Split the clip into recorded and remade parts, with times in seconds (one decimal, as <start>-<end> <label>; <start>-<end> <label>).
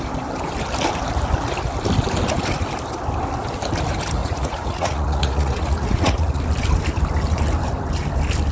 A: 0.0-4.2 recorded; 4.2-6.4 remade; 6.4-8.5 recorded